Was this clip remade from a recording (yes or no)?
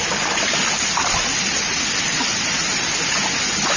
no